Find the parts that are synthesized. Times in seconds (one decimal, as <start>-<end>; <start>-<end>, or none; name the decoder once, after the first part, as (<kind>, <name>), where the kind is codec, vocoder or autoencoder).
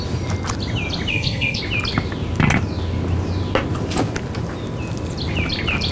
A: 1.1-1.6 (codec, SNAC)